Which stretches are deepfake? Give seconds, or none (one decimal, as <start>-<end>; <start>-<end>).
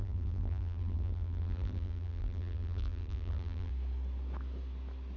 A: 0.0-3.7